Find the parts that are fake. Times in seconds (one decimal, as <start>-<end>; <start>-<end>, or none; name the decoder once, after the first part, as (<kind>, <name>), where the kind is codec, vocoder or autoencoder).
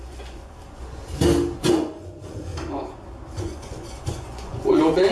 0.0-1.0 (vocoder, Vocos); 1.6-2.5; 3.4-5.1